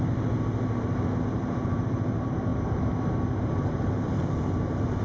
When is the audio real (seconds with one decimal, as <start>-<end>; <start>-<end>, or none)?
2.5-3.4